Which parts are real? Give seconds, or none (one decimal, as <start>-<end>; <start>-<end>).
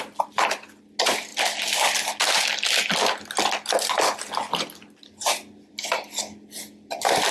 0.0-7.3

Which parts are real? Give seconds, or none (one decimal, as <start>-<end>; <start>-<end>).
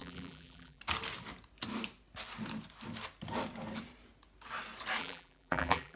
0.8-5.0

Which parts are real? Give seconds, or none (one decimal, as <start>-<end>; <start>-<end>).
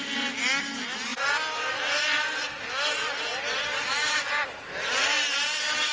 0.0-5.9